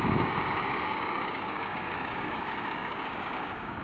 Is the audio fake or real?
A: fake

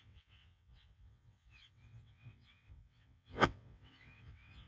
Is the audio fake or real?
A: fake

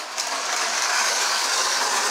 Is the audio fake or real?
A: fake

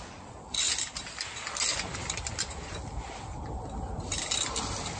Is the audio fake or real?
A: real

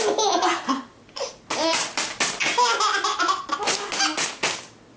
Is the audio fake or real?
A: real